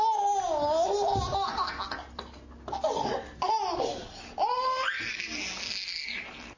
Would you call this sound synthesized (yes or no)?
no